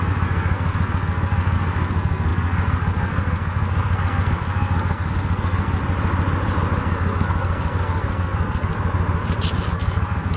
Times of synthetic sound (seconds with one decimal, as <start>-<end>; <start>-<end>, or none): 0.0-5.8; 6.8-8.7; 9.7-10.4